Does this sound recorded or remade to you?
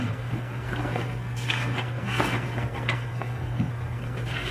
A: remade